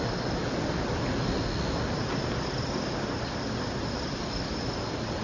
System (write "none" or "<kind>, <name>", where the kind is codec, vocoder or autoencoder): none